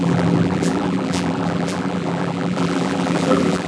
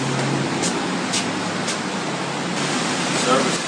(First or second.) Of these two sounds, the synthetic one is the first